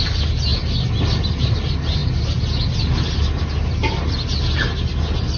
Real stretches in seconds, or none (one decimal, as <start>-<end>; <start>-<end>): 0.0-5.4